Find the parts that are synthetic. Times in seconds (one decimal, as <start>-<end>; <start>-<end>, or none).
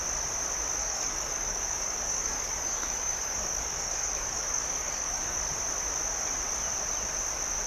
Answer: 0.8-5.4